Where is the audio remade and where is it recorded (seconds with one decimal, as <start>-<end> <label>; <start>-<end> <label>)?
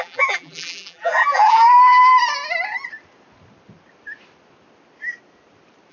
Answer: 0.0-2.1 remade; 2.1-5.9 recorded